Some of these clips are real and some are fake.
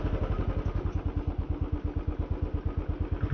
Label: real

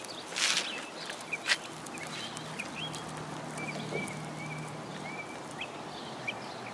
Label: real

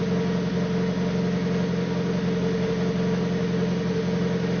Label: real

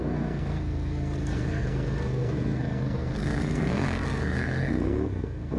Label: fake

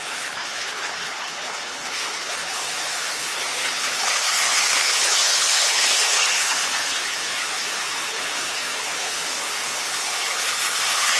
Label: fake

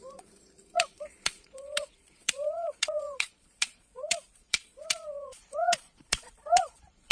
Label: fake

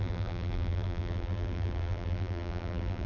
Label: fake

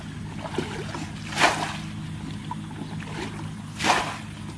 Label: real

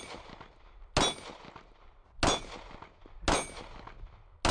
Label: real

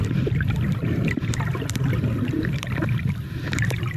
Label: real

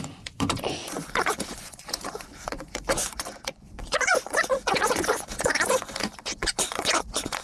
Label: fake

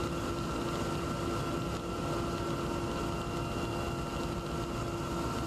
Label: real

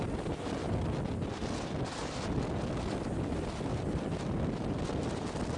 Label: real